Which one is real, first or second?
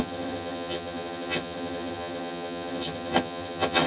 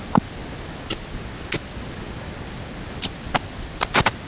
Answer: second